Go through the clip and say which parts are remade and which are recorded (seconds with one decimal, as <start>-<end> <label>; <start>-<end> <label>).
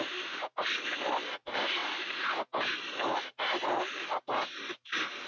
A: 0.0-5.3 recorded